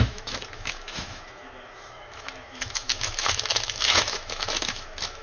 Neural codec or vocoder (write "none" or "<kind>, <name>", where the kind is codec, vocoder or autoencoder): autoencoder, DAC-VAE